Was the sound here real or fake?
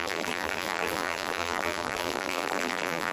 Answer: fake